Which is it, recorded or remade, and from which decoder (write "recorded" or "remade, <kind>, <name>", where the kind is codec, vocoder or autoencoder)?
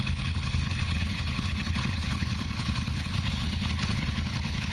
remade, codec, HILCodec